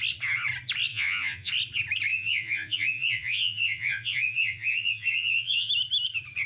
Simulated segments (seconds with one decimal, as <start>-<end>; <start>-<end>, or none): 0.9-1.5; 2.1-5.7